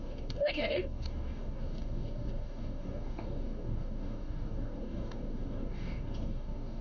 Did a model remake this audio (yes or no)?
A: yes